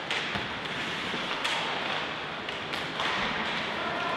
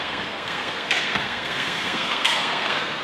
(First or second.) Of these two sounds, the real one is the first